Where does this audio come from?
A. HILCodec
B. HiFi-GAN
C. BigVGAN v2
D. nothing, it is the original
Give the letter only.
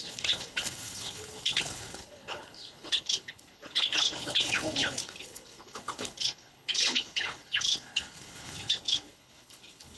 A